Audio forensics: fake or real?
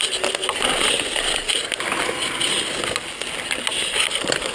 real